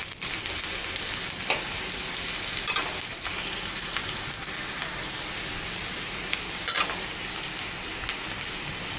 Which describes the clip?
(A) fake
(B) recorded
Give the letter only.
B